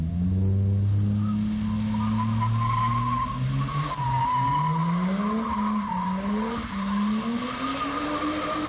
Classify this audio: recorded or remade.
recorded